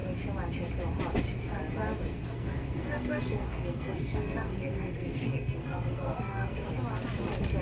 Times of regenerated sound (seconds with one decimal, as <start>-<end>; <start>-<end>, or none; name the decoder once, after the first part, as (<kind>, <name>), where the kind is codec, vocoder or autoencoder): 2.1-6.7 (codec, SNAC)